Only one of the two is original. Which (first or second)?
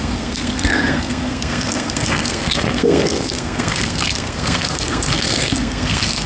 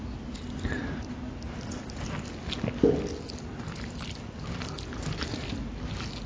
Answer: second